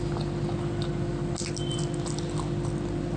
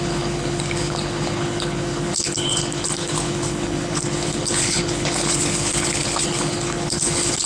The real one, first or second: first